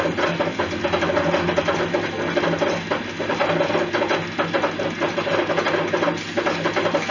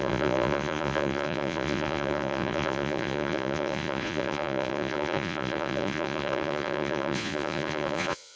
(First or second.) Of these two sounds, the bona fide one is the first